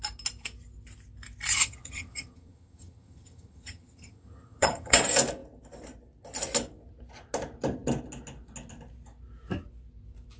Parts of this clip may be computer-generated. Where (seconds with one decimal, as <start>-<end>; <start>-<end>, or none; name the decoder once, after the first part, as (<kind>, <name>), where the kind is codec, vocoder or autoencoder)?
1.6-5.0 (vocoder, HiFi-GAN)